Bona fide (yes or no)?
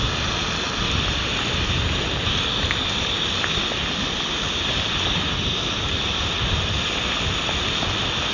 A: yes